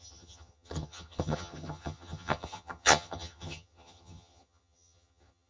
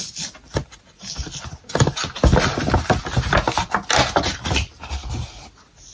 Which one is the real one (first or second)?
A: second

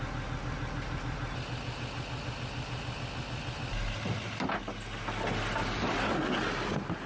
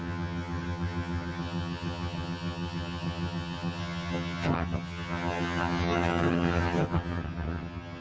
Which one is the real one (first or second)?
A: first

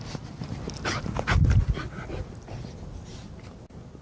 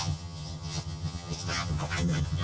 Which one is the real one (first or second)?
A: first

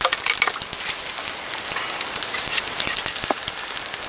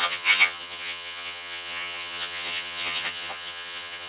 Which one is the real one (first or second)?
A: first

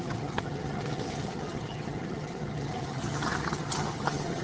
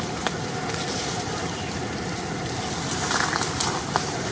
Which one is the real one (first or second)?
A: second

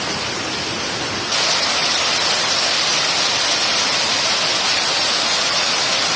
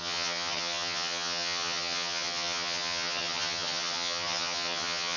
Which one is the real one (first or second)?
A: first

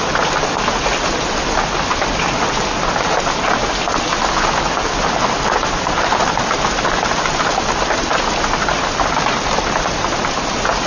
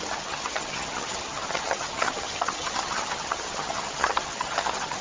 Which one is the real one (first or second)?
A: first